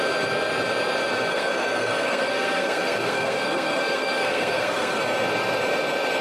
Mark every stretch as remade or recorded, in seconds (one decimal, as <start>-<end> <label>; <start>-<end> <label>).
0.0-1.3 recorded; 1.3-5.0 remade; 5.0-6.2 recorded